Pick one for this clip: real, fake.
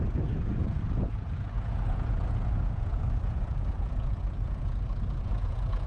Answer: fake